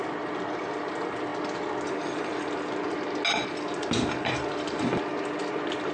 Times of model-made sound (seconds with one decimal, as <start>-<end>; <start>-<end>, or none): none